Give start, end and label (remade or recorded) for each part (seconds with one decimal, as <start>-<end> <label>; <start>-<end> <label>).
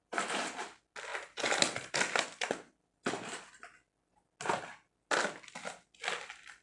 0.0-6.6 recorded